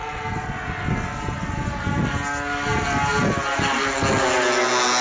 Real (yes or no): yes